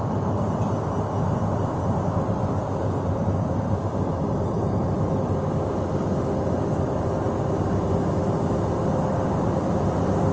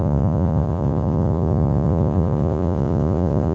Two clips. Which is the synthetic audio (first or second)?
second